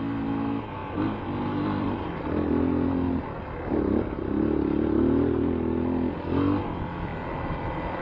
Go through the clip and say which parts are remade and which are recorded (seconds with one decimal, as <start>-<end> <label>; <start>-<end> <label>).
0.0-0.8 recorded; 0.8-2.5 remade; 2.5-7.1 recorded; 7.1-8.0 remade